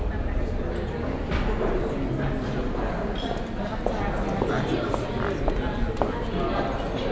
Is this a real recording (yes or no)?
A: yes